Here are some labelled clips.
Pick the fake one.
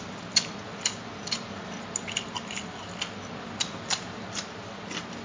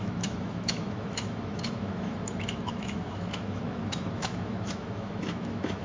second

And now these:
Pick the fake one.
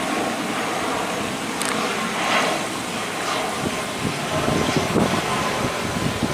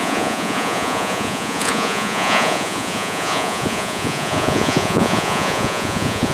second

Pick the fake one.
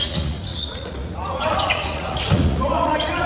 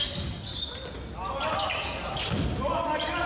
first